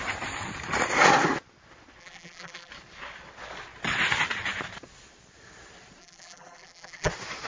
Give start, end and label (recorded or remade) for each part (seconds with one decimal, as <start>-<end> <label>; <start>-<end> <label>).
0.0-2.0 recorded; 2.0-2.7 remade; 2.7-6.0 recorded; 6.0-7.1 remade; 7.1-7.5 recorded